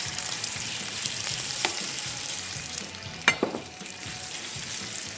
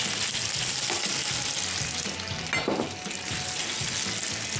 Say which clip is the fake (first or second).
first